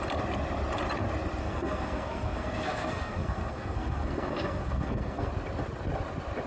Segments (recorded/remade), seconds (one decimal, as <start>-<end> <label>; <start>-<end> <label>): 0.0-1.4 recorded; 1.4-5.3 remade; 5.3-6.5 recorded